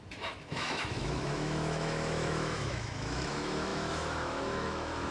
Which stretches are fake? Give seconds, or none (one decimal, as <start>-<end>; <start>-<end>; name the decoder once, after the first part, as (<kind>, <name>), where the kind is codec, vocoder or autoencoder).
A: 0.0-5.1 (autoencoder, DAC-VAE)